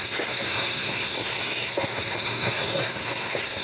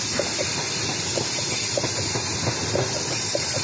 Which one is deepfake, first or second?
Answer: first